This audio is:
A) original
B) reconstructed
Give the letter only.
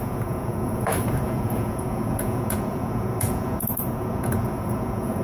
B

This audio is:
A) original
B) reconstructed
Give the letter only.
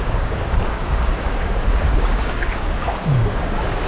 B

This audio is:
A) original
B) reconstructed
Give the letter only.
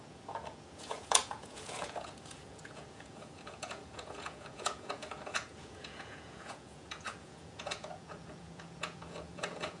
B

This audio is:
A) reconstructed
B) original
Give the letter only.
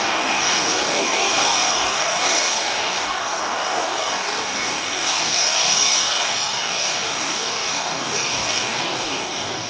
A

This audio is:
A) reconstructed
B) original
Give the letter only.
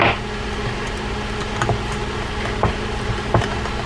B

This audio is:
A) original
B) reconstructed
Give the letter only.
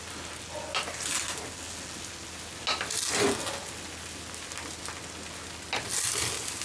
A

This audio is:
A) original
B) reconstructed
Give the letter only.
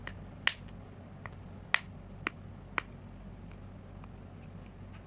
A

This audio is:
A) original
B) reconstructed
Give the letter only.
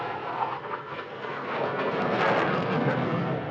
B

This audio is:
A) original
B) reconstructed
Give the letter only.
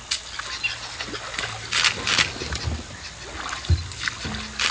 A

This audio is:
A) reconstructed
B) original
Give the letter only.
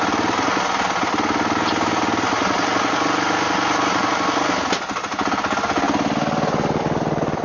B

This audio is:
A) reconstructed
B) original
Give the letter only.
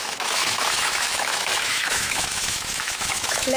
A